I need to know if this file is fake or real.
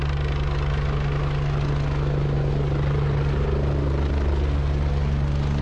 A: real